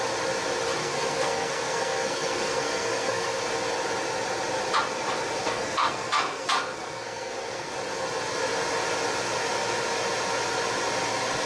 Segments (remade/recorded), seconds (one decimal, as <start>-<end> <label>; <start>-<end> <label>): 0.0-0.8 recorded; 0.8-3.4 remade; 3.4-5.4 recorded; 5.4-7.7 remade; 7.7-11.5 recorded